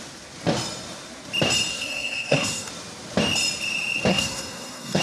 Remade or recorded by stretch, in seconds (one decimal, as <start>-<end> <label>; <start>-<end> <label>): 0.0-1.7 recorded; 1.7-2.7 remade; 2.7-4.1 recorded; 4.1-5.0 remade